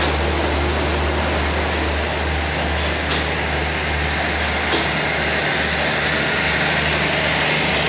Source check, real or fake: real